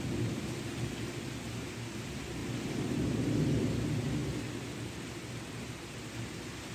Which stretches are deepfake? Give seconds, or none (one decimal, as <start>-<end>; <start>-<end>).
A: none